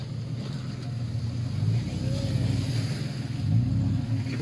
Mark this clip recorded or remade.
recorded